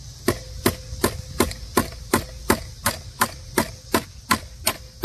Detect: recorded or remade recorded